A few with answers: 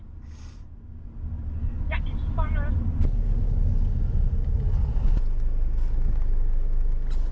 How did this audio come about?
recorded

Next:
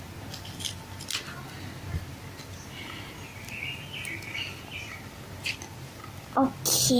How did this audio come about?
recorded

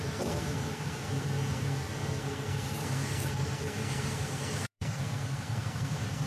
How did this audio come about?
remade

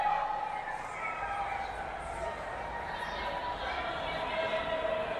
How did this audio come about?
recorded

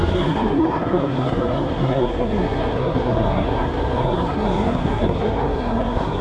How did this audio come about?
remade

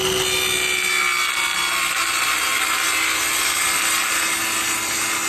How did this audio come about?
recorded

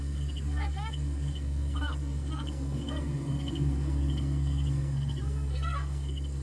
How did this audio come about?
remade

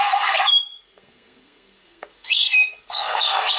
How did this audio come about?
remade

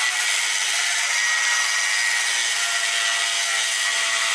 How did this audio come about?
recorded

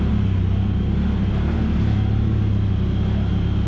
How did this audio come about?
recorded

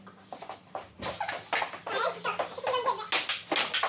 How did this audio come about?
recorded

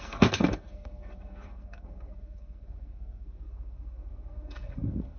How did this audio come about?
remade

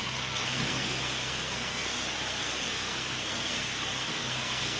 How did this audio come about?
remade